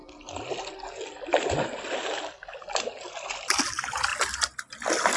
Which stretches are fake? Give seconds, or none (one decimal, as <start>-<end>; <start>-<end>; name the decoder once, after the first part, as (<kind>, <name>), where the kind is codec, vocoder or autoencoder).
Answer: 4.1-4.7 (vocoder, BigVGAN v2)